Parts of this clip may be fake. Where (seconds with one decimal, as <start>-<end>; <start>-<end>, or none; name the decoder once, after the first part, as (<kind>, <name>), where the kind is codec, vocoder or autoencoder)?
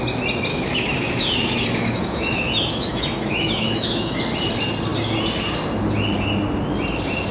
0.5-4.2 (autoencoder, DAC-VAE)